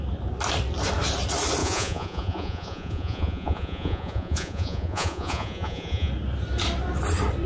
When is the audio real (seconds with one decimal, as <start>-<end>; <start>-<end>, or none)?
0.0-1.6; 6.1-7.5